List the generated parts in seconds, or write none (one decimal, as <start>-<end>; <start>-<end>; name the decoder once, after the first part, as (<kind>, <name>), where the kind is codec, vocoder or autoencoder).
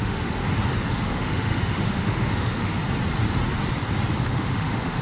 0.0-0.4 (autoencoder, DAC-VAE); 0.9-2.8; 4.1-5.0